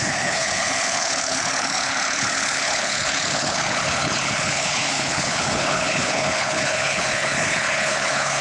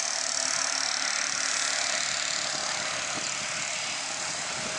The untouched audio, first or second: second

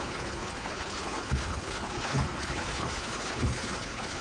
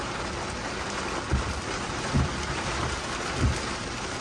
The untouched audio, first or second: second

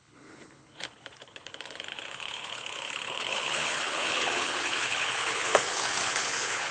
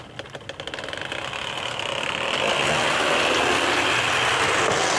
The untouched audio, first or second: second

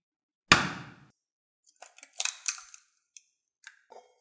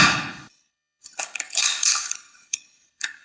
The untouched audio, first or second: first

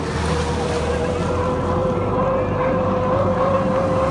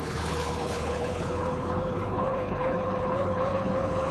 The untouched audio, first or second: first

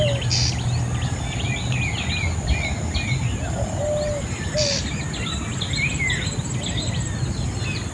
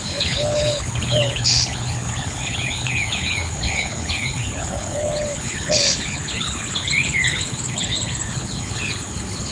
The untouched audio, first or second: first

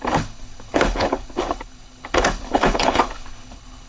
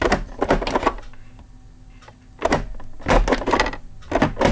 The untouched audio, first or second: second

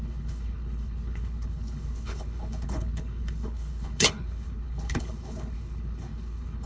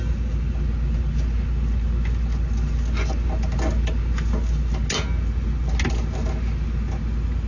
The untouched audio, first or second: second